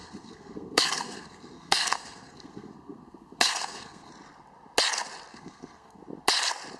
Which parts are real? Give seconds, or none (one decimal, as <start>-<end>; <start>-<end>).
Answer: 4.1-5.3; 6.0-6.8